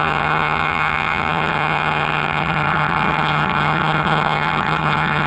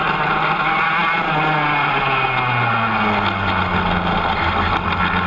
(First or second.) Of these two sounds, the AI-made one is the first